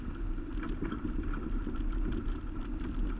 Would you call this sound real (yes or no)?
yes